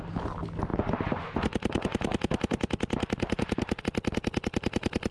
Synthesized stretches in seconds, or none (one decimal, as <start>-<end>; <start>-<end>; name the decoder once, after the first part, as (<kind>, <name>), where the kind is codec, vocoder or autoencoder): 0.7-3.8 (vocoder, BigVGAN v2)